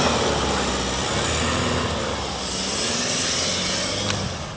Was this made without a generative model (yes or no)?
yes